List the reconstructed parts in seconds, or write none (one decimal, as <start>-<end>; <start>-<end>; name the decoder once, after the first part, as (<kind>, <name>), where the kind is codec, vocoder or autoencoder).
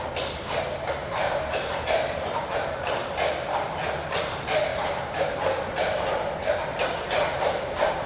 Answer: 1.0-3.0 (vocoder, BigVGAN v2); 4.7-5.4